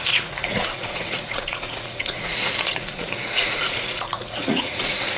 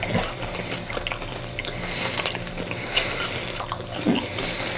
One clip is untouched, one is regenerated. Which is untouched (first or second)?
second